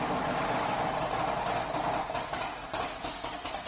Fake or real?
real